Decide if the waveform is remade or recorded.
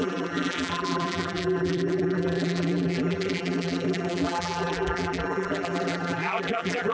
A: remade